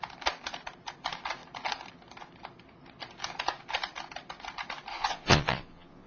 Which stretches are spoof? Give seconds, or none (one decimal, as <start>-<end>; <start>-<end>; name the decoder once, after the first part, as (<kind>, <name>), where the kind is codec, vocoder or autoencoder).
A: 4.9-6.1 (vocoder, Vocos)